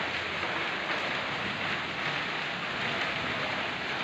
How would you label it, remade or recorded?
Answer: recorded